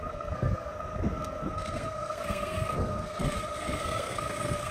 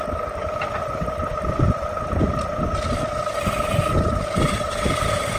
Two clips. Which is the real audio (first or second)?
second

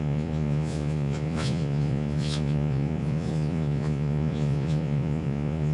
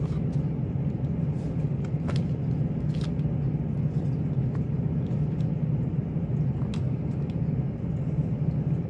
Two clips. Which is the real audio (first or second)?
second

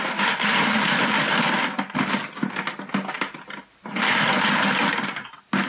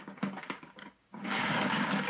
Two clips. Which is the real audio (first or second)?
first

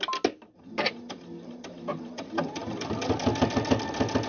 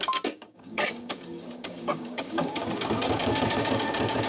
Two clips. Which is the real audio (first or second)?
first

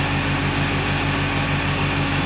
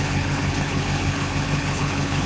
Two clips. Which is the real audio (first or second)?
first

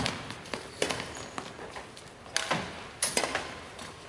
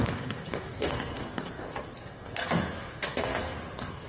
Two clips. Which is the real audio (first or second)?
first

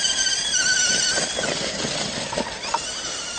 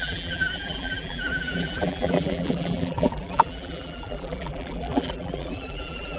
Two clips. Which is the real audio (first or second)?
first